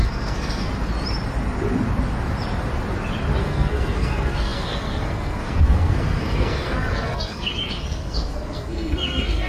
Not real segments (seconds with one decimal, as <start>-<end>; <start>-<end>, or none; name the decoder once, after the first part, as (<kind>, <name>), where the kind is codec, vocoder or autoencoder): 0.0-0.7 (codec, SNAC); 3.4-9.5